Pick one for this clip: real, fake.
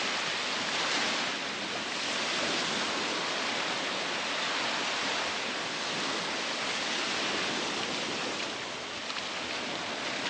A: real